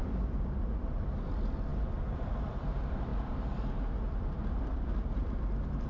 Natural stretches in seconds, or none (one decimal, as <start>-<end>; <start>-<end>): 3.1-4.2